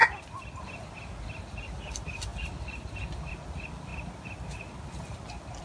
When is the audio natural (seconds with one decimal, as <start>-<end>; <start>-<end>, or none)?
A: 0.0-5.6